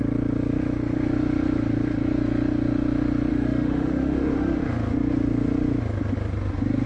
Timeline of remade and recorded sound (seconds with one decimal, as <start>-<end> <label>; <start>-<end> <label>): 0.0-3.3 recorded; 3.3-4.6 remade; 4.6-6.9 recorded